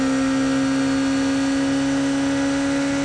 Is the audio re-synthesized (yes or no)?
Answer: no